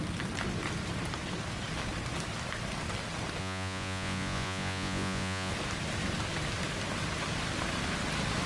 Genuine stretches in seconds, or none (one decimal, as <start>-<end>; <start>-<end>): 0.0-3.4; 5.5-8.5